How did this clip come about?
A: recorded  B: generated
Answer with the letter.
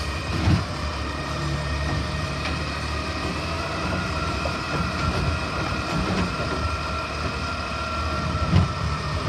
B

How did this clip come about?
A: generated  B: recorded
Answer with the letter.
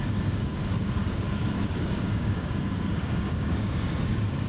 A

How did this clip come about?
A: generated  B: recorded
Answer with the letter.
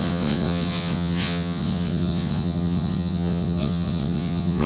A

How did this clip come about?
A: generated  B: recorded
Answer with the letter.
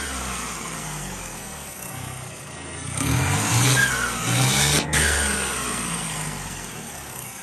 A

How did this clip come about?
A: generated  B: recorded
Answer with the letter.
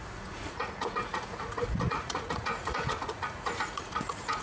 A